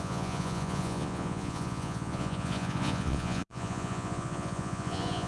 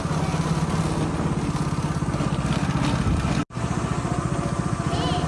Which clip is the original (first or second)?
second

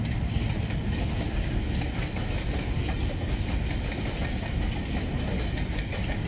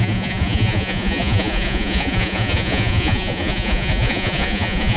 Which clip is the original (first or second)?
first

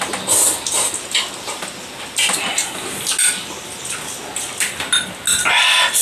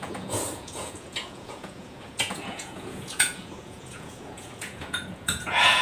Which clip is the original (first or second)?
first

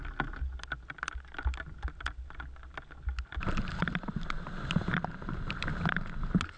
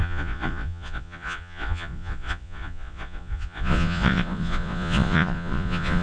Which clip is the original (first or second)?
first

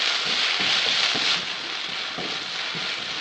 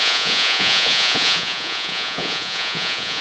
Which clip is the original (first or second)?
first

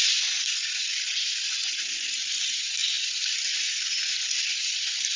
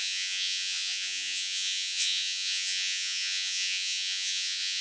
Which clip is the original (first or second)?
first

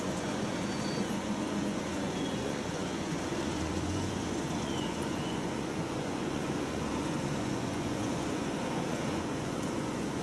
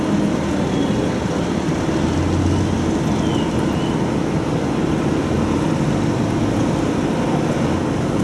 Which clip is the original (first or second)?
second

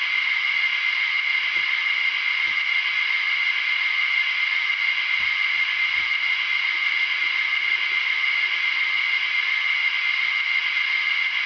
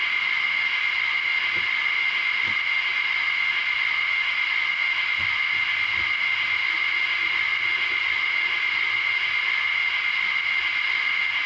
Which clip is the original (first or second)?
second